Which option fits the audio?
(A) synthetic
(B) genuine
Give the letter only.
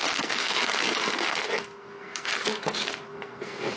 A